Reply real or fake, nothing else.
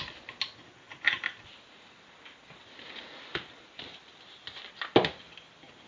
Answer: real